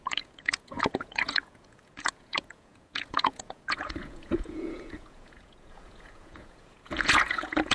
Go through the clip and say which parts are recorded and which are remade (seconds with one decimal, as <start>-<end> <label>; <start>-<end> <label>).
0.0-7.7 remade